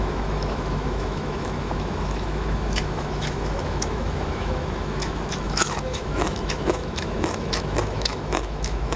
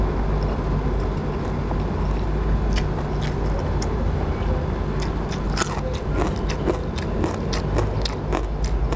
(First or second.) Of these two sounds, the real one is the second